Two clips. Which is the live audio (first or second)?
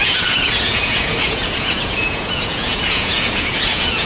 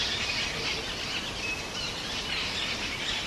second